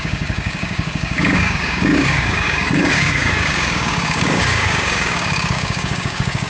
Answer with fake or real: fake